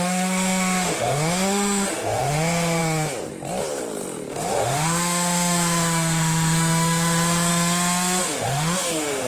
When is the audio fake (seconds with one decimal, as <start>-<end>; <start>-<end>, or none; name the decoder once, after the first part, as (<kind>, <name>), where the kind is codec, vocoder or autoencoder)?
0.0-2.8 (autoencoder, DAC-VAE); 4.3-7.5; 8.2-9.3